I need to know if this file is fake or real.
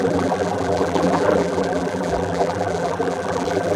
fake